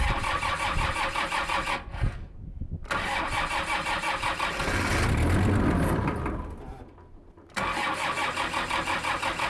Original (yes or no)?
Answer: yes